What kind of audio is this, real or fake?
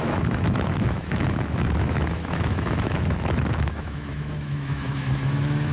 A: fake